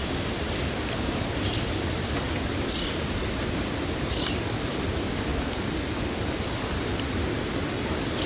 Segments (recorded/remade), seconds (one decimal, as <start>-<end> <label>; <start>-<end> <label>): 0.0-4.2 remade; 4.2-8.3 recorded